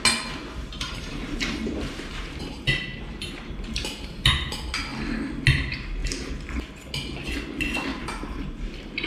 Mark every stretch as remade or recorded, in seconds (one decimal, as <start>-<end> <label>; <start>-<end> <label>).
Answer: 0.0-0.4 recorded; 0.4-4.3 remade; 4.3-7.9 recorded; 7.9-8.7 remade; 8.7-9.1 recorded